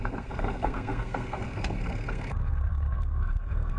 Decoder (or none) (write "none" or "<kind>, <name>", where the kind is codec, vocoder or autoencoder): codec, SNAC